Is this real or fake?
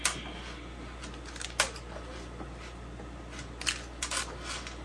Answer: real